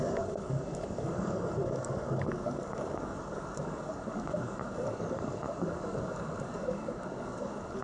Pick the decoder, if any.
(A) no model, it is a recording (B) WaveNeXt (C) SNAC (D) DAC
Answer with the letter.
D